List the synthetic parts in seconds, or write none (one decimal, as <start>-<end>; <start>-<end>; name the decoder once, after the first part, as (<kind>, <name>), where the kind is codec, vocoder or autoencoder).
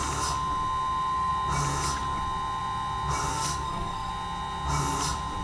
3.3-4.1 (codec, SNAC)